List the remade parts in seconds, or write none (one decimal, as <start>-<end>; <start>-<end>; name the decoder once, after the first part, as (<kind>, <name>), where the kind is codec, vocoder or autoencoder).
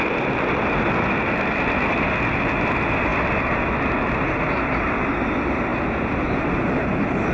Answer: none